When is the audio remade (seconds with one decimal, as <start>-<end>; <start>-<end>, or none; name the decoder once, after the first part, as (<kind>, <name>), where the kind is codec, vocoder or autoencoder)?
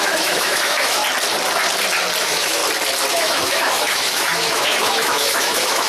0.0-1.0 (autoencoder, DAC-VAE); 2.2-2.6; 3.1-5.9